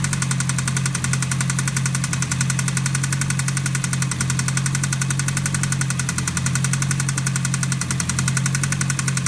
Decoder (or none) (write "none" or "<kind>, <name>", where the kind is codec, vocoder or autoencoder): none